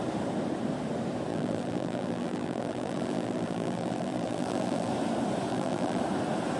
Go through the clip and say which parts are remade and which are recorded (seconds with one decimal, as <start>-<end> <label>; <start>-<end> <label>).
0.0-1.3 recorded; 1.3-4.9 remade; 4.9-5.5 recorded; 5.5-6.0 remade; 6.0-6.6 recorded